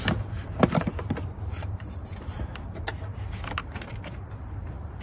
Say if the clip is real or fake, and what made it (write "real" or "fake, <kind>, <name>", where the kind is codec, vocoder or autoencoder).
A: fake, vocoder, BigVGAN v2